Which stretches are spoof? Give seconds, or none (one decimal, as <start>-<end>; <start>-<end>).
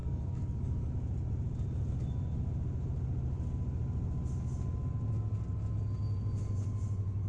0.0-0.9